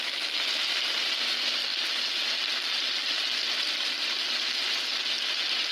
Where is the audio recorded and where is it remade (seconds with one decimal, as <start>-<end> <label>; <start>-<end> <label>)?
0.0-5.7 recorded